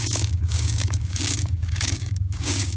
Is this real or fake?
fake